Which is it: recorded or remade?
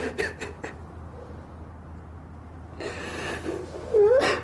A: recorded